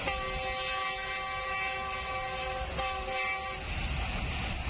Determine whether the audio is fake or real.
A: real